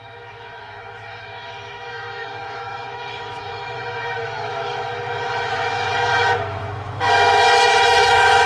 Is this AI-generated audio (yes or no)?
yes